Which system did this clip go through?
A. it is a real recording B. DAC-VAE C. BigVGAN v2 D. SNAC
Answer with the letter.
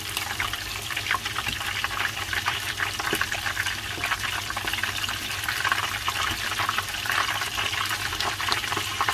C